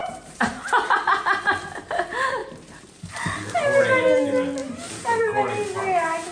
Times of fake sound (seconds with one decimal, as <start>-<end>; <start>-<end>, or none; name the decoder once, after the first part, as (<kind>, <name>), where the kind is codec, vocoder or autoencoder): 0.0-0.5 (vocoder, BigVGAN v2); 2.4-3.8; 4.6-5.2